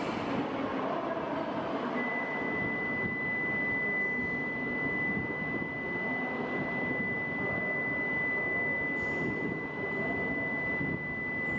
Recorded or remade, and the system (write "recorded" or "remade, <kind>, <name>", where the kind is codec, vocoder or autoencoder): recorded